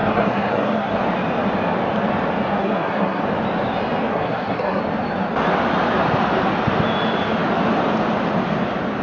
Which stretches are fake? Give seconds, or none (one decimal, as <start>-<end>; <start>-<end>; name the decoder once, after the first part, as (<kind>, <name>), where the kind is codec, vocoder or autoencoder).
0.0-1.0 (codec, SNAC); 2.6-3.2; 4.1-4.8